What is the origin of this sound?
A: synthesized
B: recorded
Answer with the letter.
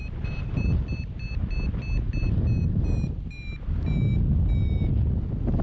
B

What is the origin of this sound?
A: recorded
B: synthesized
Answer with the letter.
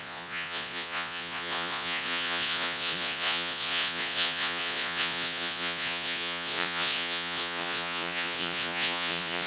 B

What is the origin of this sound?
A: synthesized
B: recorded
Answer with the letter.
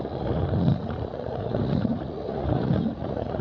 A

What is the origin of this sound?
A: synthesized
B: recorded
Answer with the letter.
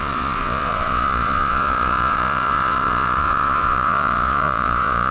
A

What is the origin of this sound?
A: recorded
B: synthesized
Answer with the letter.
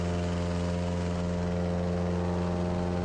A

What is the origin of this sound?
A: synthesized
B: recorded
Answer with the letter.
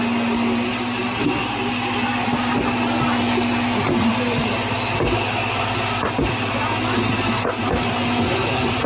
B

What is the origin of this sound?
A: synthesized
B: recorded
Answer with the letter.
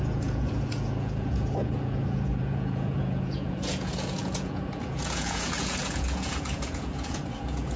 A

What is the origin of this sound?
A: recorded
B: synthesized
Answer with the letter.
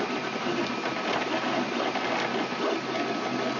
A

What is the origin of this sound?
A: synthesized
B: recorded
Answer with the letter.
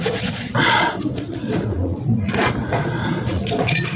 A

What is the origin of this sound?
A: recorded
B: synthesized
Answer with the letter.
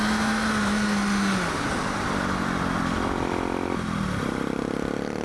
A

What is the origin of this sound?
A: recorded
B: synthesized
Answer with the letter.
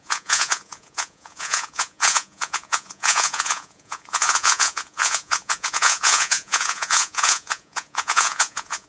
B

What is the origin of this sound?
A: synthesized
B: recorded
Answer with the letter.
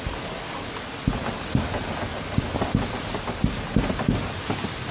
B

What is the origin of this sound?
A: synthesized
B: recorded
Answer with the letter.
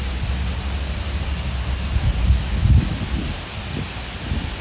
B